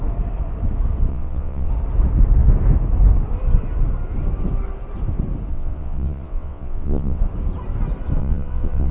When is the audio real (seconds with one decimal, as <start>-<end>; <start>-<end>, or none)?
0.0-1.1; 1.7-5.5; 7.2-8.2